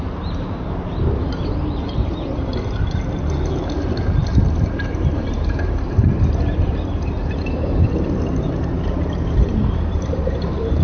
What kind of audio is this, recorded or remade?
remade